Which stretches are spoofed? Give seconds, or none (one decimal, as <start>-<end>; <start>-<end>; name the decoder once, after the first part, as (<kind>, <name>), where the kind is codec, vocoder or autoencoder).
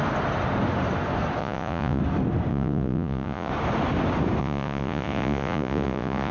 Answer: 1.4-2.0 (vocoder, Vocos); 2.5-3.5; 4.4-6.3